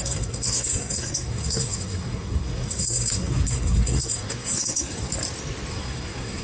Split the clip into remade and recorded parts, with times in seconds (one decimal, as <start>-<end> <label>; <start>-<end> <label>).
0.0-5.1 remade; 5.1-5.7 recorded; 5.7-6.4 remade